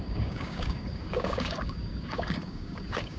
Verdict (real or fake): fake